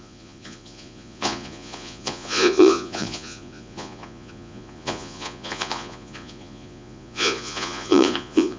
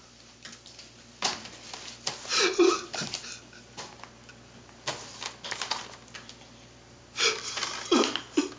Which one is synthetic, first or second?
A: first